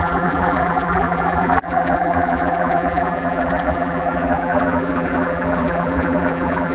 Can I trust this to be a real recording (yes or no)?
no